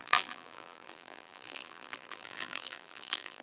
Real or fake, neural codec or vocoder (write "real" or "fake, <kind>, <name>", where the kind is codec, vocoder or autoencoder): fake, vocoder, BigVGAN v2